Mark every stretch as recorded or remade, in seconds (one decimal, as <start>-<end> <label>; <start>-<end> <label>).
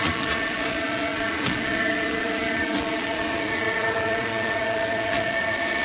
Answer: 0.0-5.8 remade